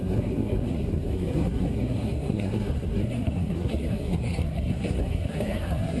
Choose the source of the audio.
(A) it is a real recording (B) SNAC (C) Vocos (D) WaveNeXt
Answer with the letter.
B